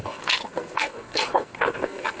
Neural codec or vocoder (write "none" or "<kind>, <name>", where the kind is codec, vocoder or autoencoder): codec, SNAC